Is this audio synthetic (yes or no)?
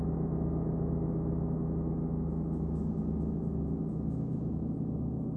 yes